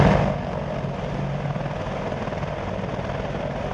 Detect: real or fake real